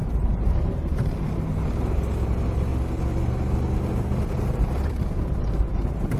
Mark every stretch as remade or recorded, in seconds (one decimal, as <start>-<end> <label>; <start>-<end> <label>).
0.0-2.7 remade; 2.7-3.9 recorded; 3.9-6.2 remade